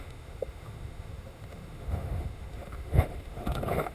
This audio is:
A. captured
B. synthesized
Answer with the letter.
B